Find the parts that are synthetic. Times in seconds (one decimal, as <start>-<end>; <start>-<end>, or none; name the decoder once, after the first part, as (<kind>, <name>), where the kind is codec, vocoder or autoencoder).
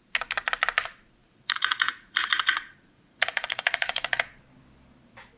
1.2-4.4 (vocoder, Vocos)